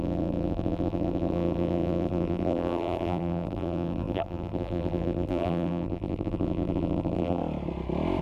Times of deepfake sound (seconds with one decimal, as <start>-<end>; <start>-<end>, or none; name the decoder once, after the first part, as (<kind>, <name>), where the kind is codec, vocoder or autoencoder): 0.0-7.4 (vocoder, BigVGAN v2)